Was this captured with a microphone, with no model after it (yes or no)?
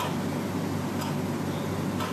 yes